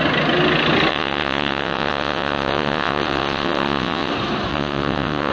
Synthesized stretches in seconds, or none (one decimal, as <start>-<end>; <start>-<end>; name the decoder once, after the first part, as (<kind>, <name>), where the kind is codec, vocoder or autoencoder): 0.9-4.1 (vocoder, WaveNeXt); 4.5-5.3